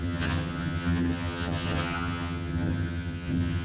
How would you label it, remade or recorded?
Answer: remade